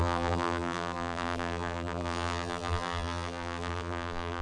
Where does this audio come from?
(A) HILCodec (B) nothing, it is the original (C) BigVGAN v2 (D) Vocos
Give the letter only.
C